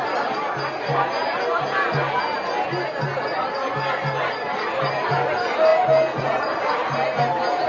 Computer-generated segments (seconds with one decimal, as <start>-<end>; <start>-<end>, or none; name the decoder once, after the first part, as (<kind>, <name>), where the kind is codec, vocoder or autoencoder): none